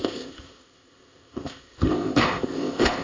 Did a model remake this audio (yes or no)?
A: yes